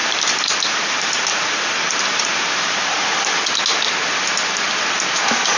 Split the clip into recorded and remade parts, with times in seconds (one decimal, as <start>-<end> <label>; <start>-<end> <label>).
0.0-3.4 remade; 3.4-5.6 recorded